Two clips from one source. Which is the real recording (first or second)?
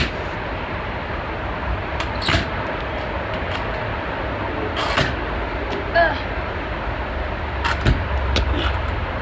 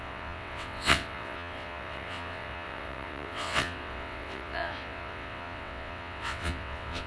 first